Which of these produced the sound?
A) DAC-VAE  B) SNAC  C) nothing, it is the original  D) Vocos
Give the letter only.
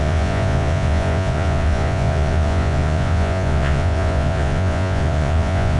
D